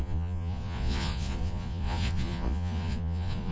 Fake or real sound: fake